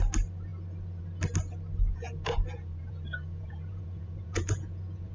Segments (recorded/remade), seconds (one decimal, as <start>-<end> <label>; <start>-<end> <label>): 0.0-1.9 recorded; 1.9-5.1 remade